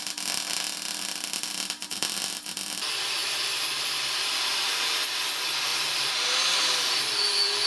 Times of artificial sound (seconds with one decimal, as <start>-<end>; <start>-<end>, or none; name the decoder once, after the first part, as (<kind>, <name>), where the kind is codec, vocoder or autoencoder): 3.2-5.3 (vocoder, BigVGAN v2); 5.7-7.7